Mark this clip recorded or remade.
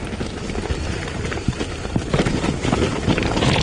remade